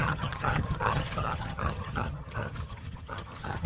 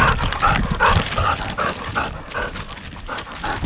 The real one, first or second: second